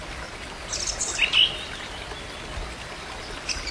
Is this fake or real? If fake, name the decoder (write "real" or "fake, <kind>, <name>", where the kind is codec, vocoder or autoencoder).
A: real